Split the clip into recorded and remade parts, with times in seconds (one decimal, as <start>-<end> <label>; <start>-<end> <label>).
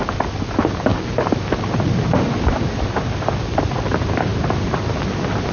0.0-0.9 remade; 0.9-2.8 recorded; 2.8-5.5 remade